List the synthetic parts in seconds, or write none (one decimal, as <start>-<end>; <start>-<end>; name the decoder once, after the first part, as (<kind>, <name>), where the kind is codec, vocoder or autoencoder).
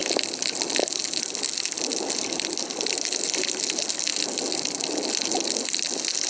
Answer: none